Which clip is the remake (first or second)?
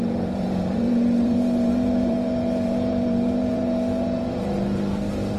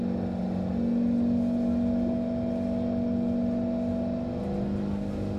first